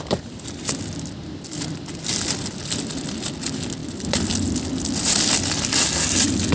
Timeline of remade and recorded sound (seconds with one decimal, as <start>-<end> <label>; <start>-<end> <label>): 0.0-6.5 recorded